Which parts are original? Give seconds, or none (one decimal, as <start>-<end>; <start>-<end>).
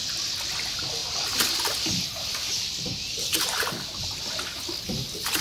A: 0.0-5.4